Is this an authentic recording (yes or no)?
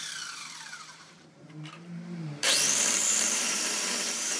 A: no